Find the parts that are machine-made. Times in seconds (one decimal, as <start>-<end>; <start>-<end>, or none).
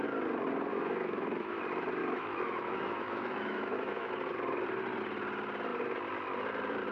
0.7-1.6; 2.0-4.1